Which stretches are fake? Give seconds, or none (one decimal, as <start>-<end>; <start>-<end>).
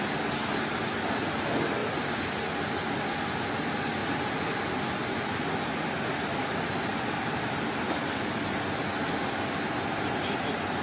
1.8-2.6; 4.0-4.5; 6.4-6.9